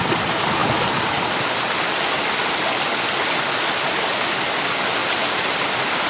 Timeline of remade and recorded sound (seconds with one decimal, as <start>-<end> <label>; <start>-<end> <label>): 0.0-5.0 recorded; 5.0-6.1 remade